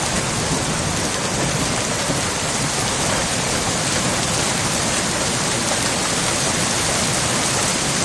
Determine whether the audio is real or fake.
real